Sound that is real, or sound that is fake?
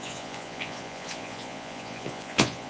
fake